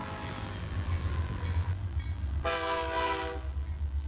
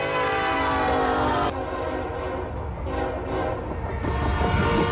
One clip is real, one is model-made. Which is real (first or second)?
second